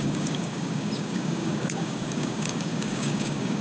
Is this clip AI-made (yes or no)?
yes